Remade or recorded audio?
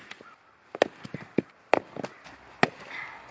recorded